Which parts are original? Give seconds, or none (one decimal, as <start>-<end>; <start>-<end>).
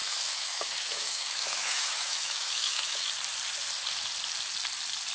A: 3.1-5.1